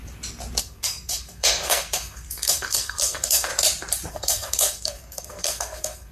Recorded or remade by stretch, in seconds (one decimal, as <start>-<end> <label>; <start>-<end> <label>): 0.0-0.6 recorded; 0.6-3.5 remade; 3.5-4.1 recorded; 4.1-6.1 remade